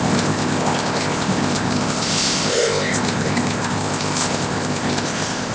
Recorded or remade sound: remade